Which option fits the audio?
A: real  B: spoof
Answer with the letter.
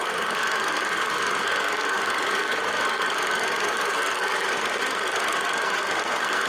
B